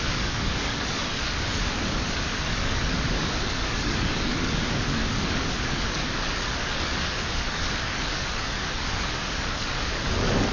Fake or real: fake